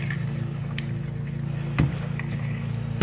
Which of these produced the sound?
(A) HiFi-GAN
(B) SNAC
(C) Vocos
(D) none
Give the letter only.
D